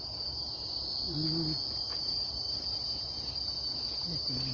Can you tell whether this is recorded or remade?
recorded